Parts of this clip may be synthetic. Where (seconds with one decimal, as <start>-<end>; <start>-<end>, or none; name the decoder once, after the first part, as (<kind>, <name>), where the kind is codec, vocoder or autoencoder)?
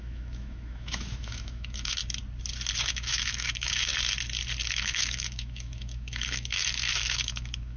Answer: 0.0-2.0 (autoencoder, DAC-VAE); 2.9-3.9; 4.7-7.8